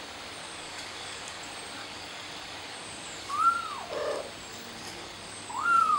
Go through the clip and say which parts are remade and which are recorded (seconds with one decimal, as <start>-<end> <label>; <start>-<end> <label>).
0.0-0.4 recorded; 0.4-1.4 remade; 1.4-1.8 recorded; 1.8-3.3 remade; 3.3-4.5 recorded; 4.5-6.0 remade